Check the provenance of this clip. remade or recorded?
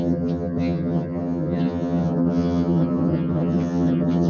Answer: remade